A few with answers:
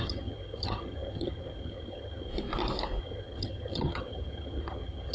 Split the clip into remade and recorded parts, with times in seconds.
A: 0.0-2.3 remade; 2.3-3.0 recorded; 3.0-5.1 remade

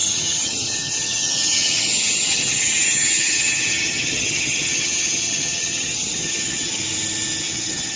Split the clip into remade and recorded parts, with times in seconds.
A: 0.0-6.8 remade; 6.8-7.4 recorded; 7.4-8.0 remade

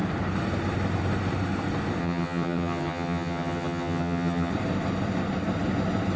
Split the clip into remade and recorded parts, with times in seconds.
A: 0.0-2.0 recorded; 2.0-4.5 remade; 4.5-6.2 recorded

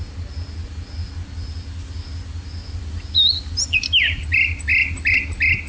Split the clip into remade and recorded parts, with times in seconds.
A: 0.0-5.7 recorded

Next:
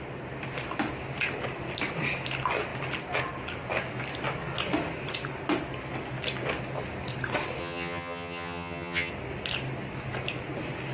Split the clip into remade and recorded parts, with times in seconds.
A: 0.0-7.6 recorded; 7.6-9.1 remade; 9.1-10.9 recorded